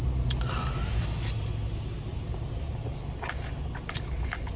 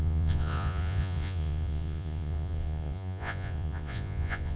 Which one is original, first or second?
first